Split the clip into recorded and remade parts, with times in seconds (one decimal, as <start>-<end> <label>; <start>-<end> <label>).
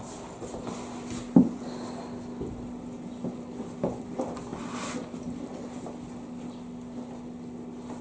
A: 0.0-8.0 recorded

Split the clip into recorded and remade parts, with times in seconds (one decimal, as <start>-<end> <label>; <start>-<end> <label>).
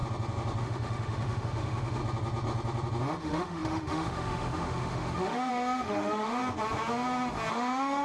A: 0.0-0.6 recorded; 0.6-2.0 remade; 2.0-3.2 recorded; 3.2-6.4 remade; 6.4-7.5 recorded; 7.5-8.0 remade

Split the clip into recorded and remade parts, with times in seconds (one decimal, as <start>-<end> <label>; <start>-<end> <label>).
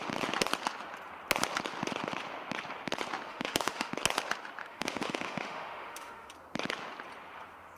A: 0.0-3.3 recorded; 3.3-3.9 remade; 3.9-4.6 recorded; 4.6-6.3 remade; 6.3-7.8 recorded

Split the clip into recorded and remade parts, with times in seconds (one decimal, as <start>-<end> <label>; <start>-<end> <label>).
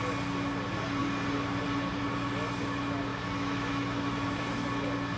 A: 0.0-3.1 recorded; 3.1-4.4 remade; 4.4-5.2 recorded